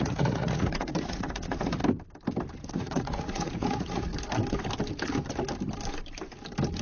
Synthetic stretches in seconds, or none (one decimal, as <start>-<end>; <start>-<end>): 0.0-1.8; 2.7-4.1